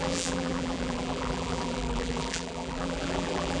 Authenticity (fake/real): fake